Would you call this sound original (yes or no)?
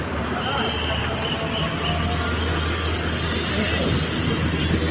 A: yes